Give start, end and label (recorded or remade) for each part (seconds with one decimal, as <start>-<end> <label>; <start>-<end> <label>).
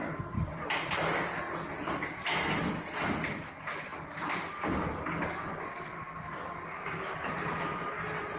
0.0-8.4 recorded